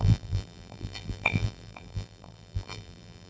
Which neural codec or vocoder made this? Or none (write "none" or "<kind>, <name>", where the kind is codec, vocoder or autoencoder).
vocoder, BigVGAN v2